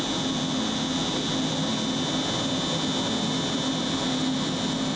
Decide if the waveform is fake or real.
real